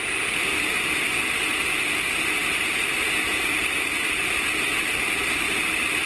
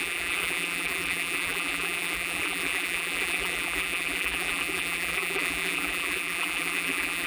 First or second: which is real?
first